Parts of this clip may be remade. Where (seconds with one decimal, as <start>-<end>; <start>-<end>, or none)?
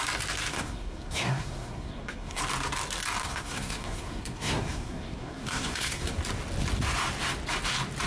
0.5-2.4; 3.2-6.2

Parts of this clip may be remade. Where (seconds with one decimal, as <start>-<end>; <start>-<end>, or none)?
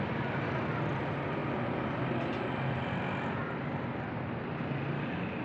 none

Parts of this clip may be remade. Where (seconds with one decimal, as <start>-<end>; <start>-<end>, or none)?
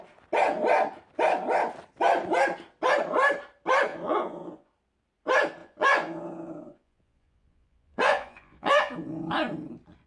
3.9-4.7; 5.6-9.2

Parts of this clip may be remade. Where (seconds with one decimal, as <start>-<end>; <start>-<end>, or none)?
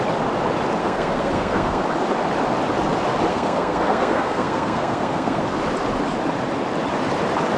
0.8-1.8; 3.3-5.4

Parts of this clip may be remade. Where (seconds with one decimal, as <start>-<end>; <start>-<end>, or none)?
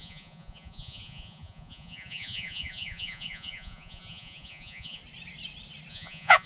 0.0-5.0; 5.9-6.5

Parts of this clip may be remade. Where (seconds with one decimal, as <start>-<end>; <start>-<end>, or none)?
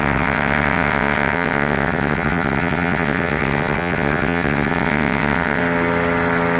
0.0-5.6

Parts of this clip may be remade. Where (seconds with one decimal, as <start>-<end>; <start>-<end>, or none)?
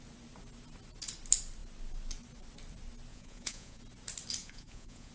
3.1-3.8; 4.4-5.1